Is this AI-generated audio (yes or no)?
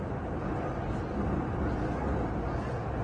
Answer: no